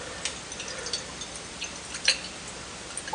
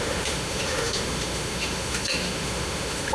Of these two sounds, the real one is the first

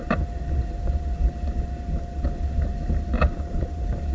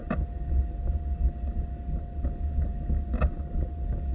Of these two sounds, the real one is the second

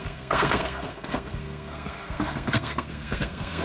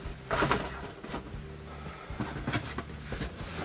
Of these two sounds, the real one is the second